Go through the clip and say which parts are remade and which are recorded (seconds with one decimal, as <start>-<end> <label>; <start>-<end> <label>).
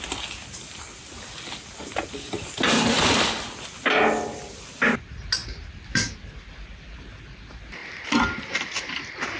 0.0-9.4 recorded